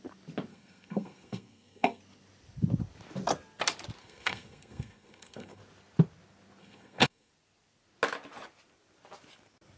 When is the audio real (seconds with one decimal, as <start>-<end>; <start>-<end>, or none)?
0.0-0.5; 2.0-4.0; 5.6-6.6; 7.3-9.8